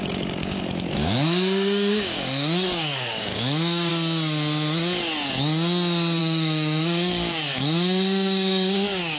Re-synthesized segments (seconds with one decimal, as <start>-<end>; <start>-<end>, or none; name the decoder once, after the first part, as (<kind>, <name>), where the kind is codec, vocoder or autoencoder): 0.0-3.9 (codec, DAC); 6.2-9.2